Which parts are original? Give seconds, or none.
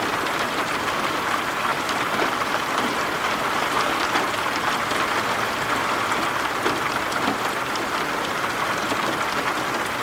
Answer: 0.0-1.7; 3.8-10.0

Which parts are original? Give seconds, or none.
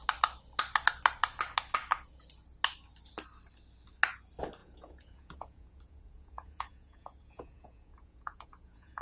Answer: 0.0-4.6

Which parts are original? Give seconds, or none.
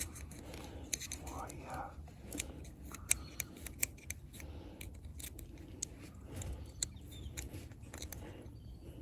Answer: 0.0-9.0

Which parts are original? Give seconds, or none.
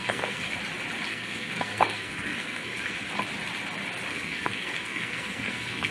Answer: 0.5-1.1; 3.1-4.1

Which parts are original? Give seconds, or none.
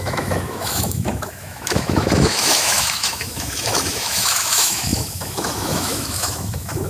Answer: none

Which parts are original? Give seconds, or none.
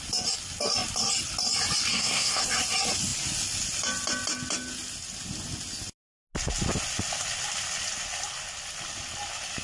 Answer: 0.0-1.9; 2.4-9.6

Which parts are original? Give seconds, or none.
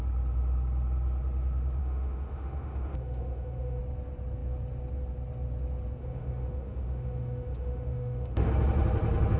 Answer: 0.0-1.8; 3.8-6.0; 8.5-9.4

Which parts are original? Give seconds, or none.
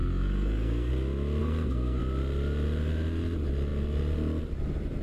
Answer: 0.9-1.4; 2.0-5.0